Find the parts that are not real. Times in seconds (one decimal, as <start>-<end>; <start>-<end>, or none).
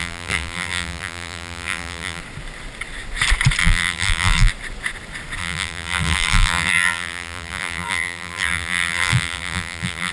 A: 0.0-2.2; 3.6-4.5; 5.4-10.1